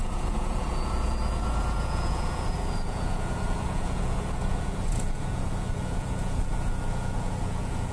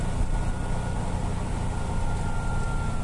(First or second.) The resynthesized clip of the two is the first